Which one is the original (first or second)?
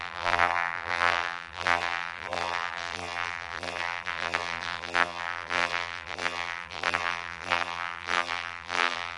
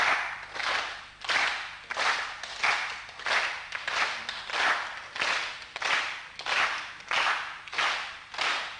second